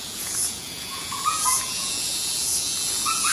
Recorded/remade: remade